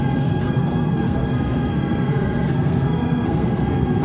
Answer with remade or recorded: remade